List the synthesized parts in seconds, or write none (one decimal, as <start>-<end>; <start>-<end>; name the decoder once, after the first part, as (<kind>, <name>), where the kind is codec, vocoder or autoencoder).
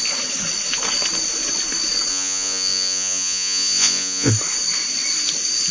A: 2.1-4.3 (vocoder, Vocos)